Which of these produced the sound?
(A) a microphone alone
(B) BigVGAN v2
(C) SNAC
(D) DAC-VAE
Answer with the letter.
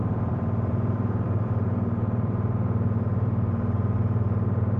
B